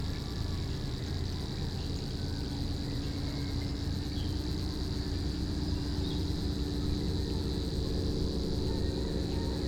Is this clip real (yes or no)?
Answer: yes